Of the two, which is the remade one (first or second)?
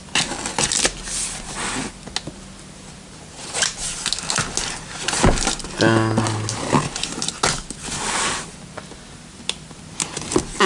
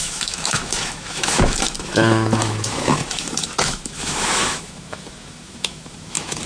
second